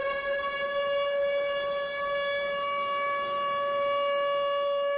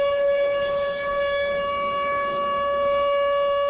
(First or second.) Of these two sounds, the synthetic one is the second